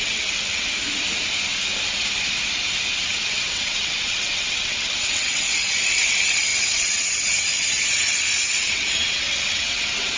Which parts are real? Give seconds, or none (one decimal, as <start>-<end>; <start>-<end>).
0.7-3.1